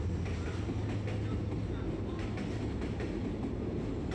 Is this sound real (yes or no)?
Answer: yes